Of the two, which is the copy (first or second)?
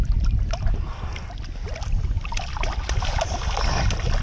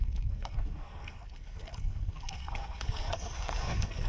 second